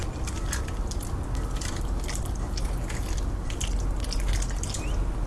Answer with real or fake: real